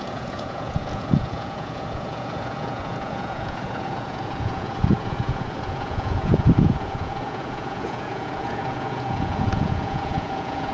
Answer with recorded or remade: remade